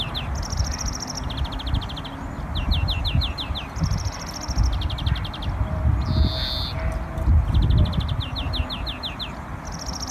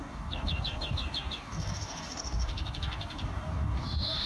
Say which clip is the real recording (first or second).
first